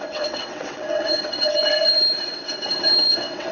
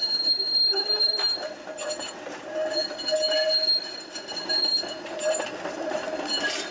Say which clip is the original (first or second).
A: second